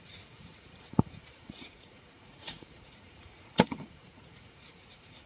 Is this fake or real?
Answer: fake